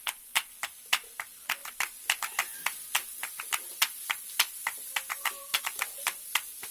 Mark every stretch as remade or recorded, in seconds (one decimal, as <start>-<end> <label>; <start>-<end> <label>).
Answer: 0.0-6.7 recorded